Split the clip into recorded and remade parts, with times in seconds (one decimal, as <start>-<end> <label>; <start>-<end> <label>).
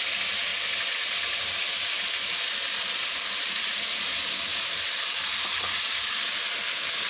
0.0-7.1 recorded